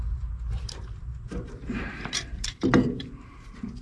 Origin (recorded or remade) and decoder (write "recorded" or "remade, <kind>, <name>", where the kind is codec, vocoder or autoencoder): remade, vocoder, BigVGAN v2